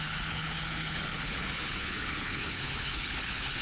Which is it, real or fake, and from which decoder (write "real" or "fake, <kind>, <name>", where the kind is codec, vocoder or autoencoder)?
fake, codec, HILCodec